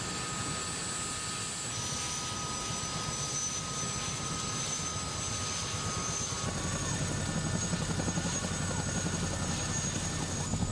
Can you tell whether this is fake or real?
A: real